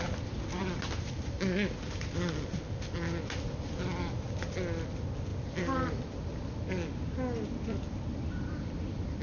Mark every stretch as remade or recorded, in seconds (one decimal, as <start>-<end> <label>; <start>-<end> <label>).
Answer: 0.0-9.2 recorded